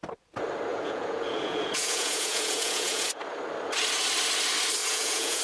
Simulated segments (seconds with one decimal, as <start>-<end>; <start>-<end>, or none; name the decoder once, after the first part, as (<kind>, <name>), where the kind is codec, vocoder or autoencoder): 0.7-3.1 (vocoder, Vocos); 4.8-5.4